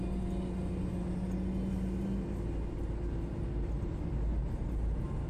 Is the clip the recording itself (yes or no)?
yes